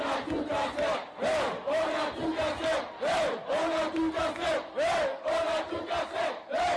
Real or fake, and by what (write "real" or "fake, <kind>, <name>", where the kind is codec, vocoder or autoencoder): real